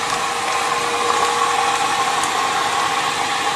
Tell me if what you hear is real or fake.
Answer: real